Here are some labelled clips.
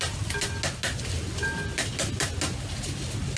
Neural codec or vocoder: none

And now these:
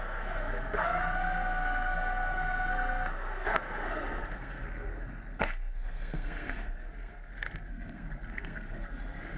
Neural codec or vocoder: codec, SNAC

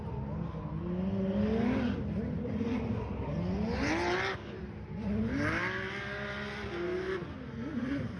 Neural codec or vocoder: none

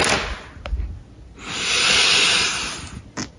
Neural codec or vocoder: none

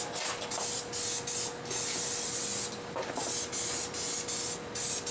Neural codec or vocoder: none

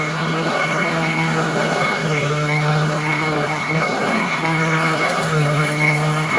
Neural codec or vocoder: codec, SNAC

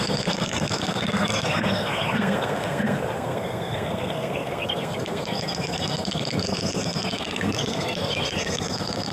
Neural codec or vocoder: codec, SNAC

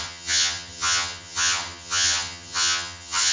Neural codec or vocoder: vocoder, HiFi-GAN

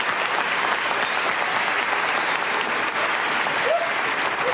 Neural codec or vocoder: none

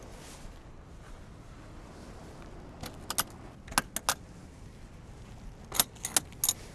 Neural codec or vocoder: none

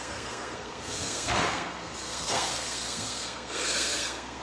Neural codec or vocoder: codec, SNAC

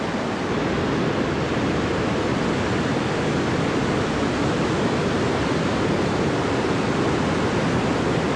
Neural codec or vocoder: none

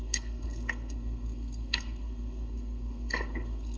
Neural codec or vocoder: codec, SNAC